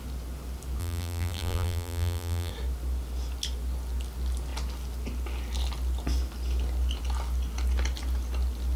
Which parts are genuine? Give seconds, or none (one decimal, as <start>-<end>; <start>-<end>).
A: 0.0-0.8; 2.5-8.8